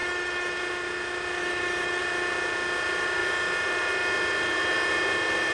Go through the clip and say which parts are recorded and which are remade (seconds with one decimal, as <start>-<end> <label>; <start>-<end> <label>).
0.0-0.6 remade; 0.6-1.4 recorded; 1.4-2.0 remade; 2.0-5.5 recorded